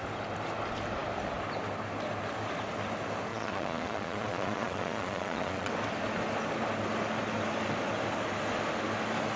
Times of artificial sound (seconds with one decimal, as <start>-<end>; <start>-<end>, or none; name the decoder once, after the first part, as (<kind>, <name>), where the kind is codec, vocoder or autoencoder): 3.3-5.7 (vocoder, Vocos)